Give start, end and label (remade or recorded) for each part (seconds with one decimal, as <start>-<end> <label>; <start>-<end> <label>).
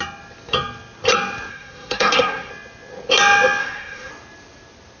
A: 0.0-1.5 recorded; 1.5-2.5 remade; 2.5-3.6 recorded; 3.6-4.1 remade; 4.1-5.0 recorded